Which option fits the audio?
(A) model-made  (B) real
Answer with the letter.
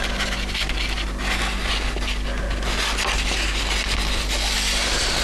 B